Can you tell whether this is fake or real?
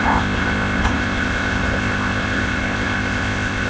fake